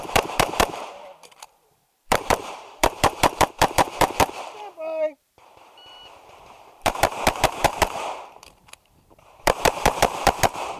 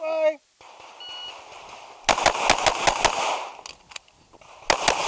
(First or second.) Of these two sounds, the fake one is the first